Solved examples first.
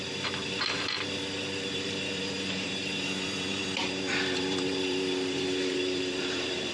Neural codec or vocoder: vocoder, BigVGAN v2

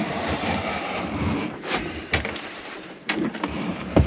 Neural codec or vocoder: vocoder, BigVGAN v2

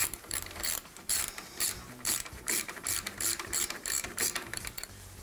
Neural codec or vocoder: vocoder, BigVGAN v2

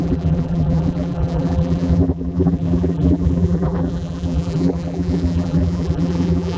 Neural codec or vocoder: vocoder, BigVGAN v2